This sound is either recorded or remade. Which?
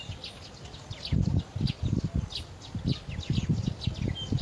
recorded